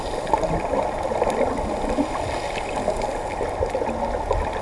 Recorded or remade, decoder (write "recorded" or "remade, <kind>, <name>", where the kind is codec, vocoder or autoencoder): recorded